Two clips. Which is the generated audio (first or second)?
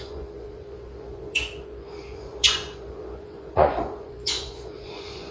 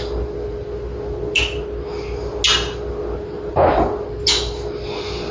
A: first